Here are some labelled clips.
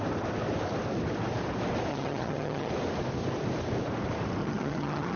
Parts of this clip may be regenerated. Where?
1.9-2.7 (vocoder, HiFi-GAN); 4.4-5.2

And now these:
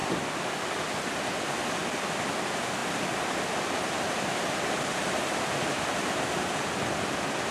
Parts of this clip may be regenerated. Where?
none

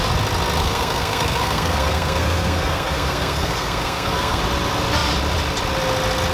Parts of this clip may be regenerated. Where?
0.6-4.4 (codec, SNAC)

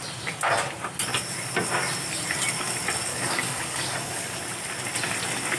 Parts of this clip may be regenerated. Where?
3.1-4.4 (codec, DAC)

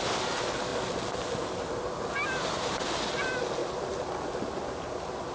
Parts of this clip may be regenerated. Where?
none

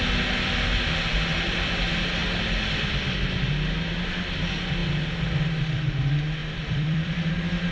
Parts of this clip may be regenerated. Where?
1.1-1.8 (vocoder, BigVGAN v2); 6.4-7.3

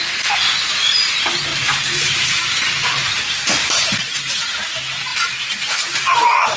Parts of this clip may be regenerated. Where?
1.5-4.3 (vocoder, BigVGAN v2); 5.1-6.6